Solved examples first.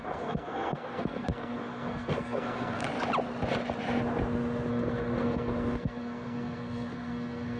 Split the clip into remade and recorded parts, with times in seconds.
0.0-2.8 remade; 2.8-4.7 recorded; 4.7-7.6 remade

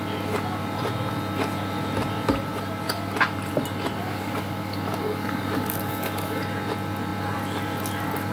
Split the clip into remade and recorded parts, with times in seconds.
0.0-4.0 recorded; 4.0-6.4 remade; 6.4-8.3 recorded

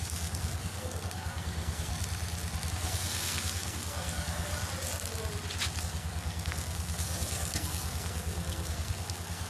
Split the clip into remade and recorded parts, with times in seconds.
0.0-1.9 remade; 1.9-2.7 recorded; 2.7-4.5 remade; 4.5-5.8 recorded; 5.8-9.5 remade

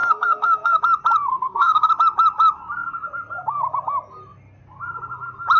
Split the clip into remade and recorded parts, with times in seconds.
0.0-0.8 remade; 0.8-1.3 recorded; 1.3-1.9 remade; 1.9-5.6 recorded

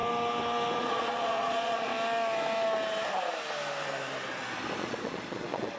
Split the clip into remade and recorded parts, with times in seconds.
0.0-0.8 recorded; 0.8-1.9 remade; 1.9-4.8 recorded; 4.8-5.8 remade

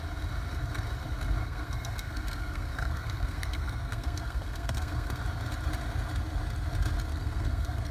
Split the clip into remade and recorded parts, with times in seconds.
0.0-1.4 recorded; 1.4-5.2 remade; 5.2-7.1 recorded; 7.1-7.9 remade

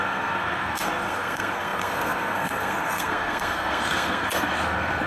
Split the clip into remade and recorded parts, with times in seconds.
0.0-5.1 remade

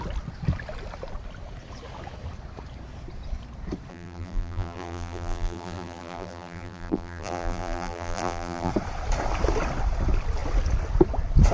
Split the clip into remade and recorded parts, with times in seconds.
0.0-3.9 recorded; 3.9-8.7 remade; 8.7-11.5 recorded